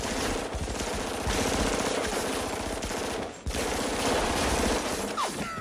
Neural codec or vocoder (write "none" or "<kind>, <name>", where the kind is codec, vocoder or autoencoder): none